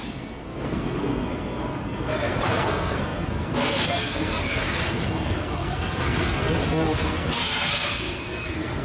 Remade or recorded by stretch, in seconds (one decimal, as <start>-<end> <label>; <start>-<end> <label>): 0.0-8.8 remade